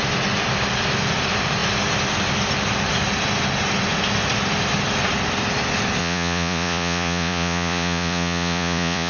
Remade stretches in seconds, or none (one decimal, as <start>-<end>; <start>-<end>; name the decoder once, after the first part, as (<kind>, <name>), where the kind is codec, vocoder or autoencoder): 6.0-9.1 (vocoder, Vocos)